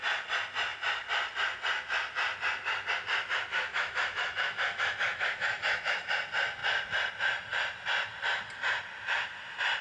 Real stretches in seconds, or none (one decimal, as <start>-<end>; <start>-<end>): 0.0-3.5; 6.1-9.8